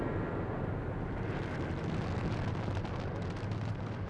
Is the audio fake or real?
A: real